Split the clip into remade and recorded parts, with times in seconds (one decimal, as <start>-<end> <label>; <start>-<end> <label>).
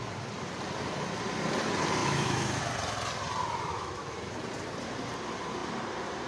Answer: 0.0-2.0 recorded; 2.0-2.6 remade; 2.6-3.7 recorded; 3.7-4.3 remade; 4.3-6.3 recorded